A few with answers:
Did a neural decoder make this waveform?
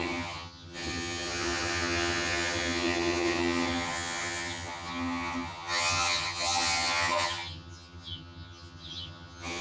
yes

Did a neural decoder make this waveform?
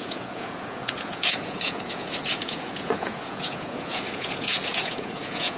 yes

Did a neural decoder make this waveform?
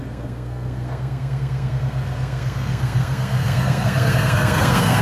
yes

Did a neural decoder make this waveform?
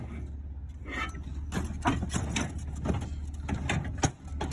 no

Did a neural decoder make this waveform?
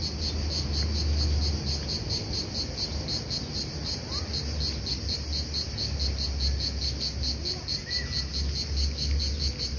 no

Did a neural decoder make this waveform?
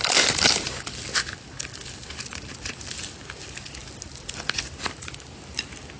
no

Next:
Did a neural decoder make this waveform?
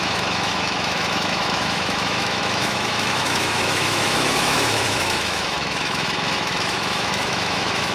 yes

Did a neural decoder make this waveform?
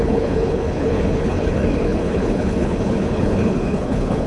yes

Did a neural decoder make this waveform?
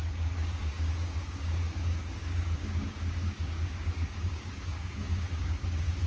yes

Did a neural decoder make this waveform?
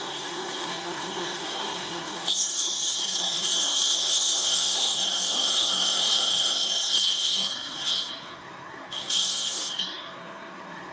yes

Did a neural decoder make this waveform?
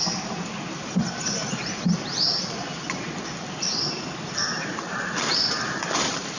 yes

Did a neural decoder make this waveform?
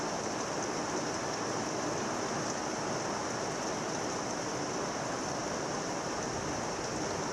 no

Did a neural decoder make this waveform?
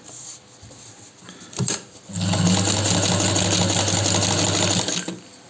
no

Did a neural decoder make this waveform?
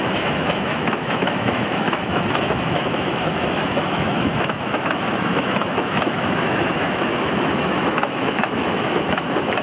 yes